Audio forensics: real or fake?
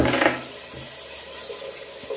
real